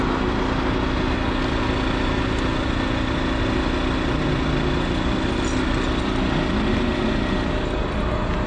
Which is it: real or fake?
real